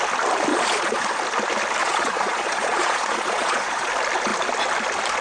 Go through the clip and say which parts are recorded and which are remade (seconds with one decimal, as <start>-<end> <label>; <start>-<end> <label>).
0.0-0.5 recorded; 0.5-1.2 remade; 1.2-1.8 recorded; 1.8-3.9 remade; 3.9-5.2 recorded